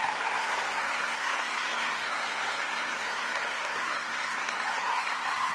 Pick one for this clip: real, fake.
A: fake